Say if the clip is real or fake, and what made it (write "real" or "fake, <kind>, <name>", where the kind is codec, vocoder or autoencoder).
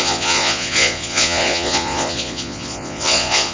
fake, vocoder, Vocos